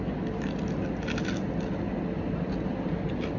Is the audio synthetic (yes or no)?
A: no